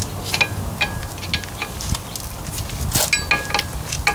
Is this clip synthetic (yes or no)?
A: no